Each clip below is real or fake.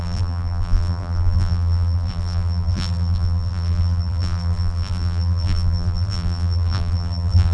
fake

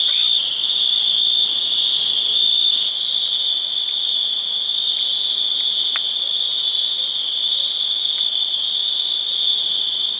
fake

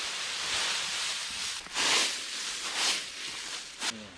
real